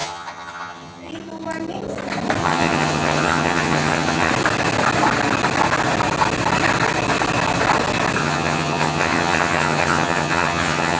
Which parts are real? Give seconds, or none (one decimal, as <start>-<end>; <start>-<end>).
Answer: 1.1-2.4; 4.3-8.2